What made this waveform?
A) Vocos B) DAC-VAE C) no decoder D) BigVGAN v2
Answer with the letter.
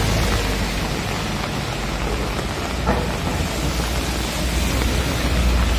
C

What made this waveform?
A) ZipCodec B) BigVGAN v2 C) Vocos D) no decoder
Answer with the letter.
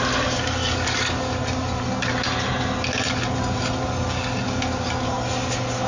D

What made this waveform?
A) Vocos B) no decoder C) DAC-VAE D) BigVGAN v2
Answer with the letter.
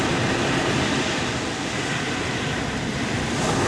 B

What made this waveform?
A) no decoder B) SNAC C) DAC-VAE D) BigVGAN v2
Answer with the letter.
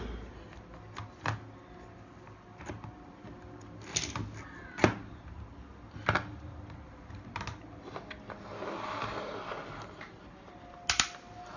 A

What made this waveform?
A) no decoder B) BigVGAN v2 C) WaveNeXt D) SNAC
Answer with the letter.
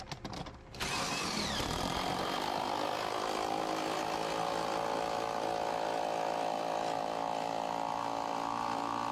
A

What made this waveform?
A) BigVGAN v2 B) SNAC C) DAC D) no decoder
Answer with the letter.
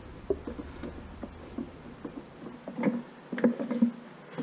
D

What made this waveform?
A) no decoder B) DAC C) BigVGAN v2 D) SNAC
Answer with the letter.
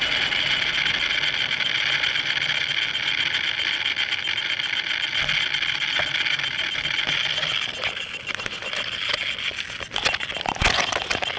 A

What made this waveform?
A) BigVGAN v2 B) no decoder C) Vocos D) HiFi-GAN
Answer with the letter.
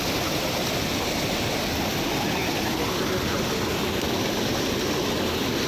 B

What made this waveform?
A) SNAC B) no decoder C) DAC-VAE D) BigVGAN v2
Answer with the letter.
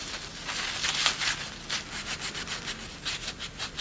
B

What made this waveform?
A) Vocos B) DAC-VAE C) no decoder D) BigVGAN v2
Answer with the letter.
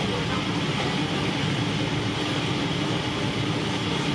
C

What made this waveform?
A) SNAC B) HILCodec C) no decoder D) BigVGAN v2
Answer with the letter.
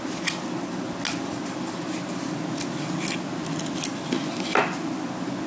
C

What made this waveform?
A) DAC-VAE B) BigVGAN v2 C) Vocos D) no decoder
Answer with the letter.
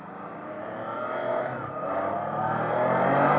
D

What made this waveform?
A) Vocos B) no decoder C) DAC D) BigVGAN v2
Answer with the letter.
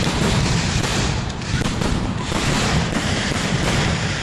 D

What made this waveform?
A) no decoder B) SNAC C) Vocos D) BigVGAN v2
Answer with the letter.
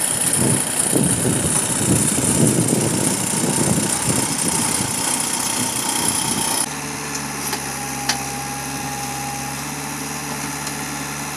A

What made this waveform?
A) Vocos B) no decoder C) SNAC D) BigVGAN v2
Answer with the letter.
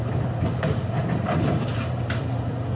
D